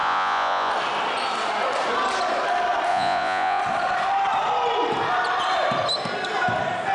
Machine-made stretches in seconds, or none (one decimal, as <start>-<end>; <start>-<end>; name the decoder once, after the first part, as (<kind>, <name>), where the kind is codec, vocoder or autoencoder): 0.0-0.7 (vocoder, Vocos); 2.9-3.6